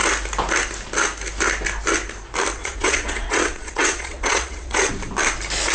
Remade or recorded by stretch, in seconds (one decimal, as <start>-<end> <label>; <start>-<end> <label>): 0.0-2.6 recorded; 2.6-4.9 remade; 4.9-5.7 recorded